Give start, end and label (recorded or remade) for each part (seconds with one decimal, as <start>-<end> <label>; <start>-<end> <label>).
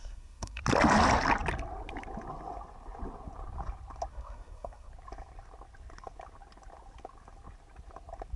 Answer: 0.0-0.6 remade; 0.6-4.1 recorded; 4.1-4.9 remade; 4.9-8.4 recorded